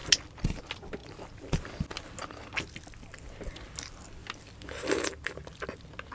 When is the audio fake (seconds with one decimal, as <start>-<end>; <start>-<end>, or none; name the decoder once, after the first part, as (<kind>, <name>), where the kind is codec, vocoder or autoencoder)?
none